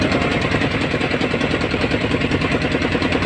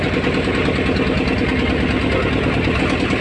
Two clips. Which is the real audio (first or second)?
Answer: second